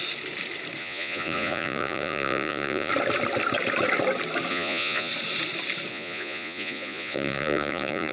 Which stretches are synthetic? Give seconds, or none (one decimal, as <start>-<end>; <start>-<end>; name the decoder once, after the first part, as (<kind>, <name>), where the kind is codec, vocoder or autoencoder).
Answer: 0.8-2.9 (vocoder, Vocos); 4.5-5.1; 5.9-8.1